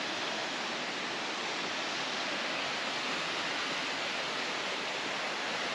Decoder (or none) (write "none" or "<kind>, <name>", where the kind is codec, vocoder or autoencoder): none